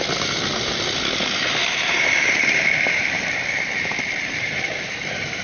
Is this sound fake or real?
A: fake